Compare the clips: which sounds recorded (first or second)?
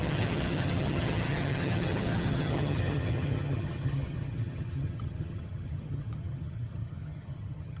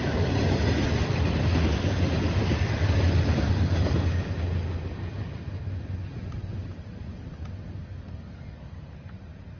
second